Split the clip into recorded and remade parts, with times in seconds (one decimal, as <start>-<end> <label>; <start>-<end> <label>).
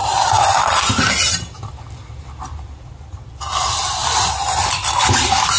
0.0-5.6 recorded